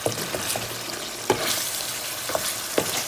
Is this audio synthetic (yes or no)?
no